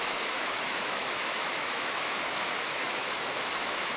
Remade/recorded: remade